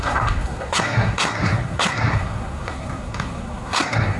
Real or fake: fake